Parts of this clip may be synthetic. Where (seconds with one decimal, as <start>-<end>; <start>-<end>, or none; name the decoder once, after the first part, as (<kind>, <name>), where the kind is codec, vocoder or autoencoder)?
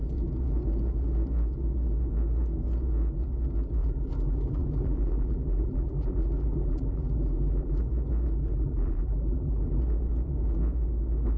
3.8-7.8 (vocoder, BigVGAN v2); 8.4-9.8